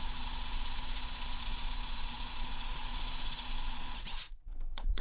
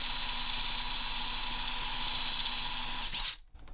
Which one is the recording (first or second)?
second